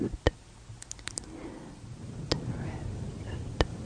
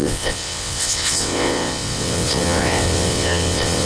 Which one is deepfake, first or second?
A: second